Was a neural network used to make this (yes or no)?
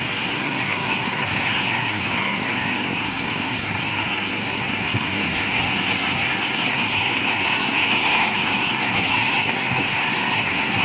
yes